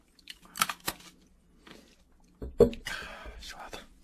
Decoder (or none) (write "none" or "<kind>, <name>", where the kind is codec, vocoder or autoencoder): none